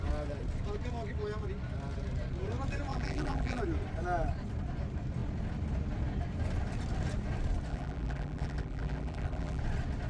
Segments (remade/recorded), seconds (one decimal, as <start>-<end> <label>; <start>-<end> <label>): 0.0-2.9 recorded; 2.9-3.6 remade; 3.6-7.7 recorded; 7.7-9.6 remade; 9.6-10.1 recorded